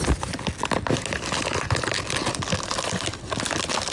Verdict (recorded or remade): recorded